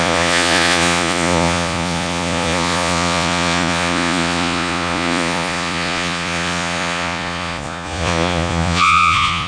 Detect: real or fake fake